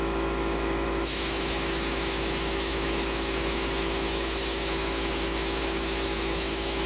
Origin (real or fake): fake